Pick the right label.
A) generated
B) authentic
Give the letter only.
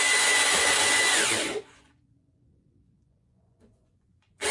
A